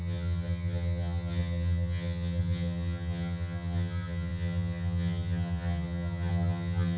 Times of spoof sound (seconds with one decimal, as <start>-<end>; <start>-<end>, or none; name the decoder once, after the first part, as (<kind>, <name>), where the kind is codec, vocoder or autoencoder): 0.0-7.0 (vocoder, HiFi-GAN)